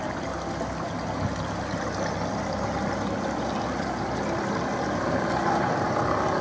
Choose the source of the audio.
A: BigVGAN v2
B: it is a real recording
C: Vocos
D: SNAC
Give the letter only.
B